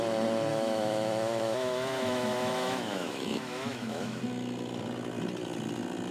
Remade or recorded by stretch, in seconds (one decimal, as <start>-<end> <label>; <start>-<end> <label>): 0.0-0.5 recorded; 0.5-4.2 remade; 4.2-6.1 recorded